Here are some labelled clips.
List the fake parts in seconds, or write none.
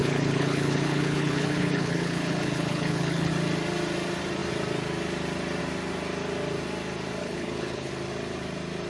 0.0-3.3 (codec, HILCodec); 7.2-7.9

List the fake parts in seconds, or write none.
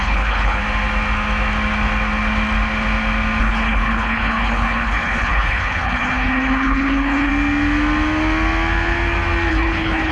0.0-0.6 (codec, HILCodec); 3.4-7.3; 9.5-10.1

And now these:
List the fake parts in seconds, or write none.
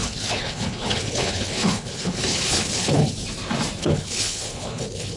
0.0-3.1 (codec, HILCodec); 3.8-5.2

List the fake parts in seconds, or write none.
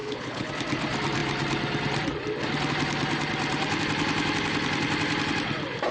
0.0-0.5 (codec, HILCodec)